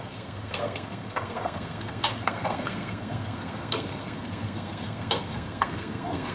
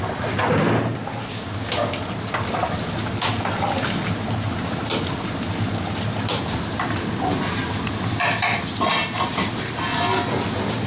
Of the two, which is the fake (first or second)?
first